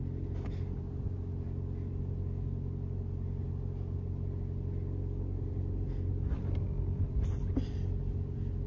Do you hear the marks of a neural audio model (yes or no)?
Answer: no